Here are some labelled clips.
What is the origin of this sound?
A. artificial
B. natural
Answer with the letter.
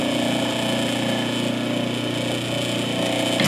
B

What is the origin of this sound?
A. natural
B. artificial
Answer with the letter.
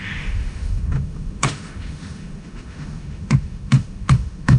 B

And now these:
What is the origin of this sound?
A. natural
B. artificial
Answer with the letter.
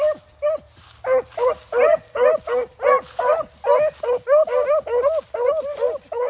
A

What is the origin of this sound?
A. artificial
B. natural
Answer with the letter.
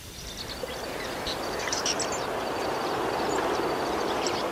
B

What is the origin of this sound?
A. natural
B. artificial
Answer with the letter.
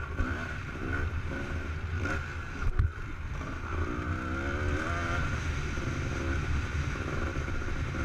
A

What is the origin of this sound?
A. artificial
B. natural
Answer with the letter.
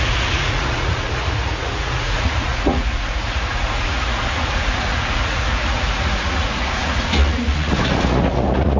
A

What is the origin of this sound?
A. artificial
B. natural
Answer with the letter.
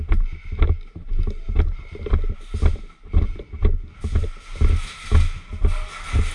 B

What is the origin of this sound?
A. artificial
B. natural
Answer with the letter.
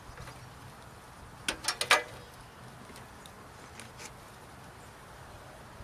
B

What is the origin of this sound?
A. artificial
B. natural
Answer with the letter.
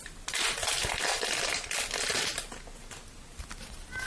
B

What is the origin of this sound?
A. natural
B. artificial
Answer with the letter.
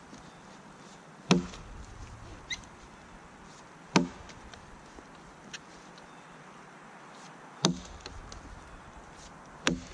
A